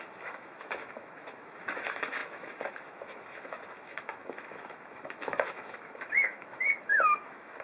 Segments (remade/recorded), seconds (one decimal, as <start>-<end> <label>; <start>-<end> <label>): 0.0-7.6 remade